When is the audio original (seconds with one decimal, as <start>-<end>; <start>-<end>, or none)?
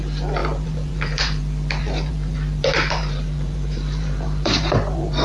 0.0-0.4; 1.4-1.8